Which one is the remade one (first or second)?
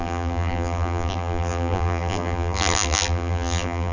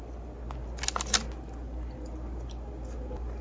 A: first